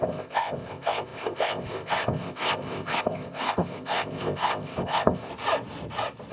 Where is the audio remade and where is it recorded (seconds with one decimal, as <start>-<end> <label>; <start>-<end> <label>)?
0.0-5.3 remade; 5.3-6.3 recorded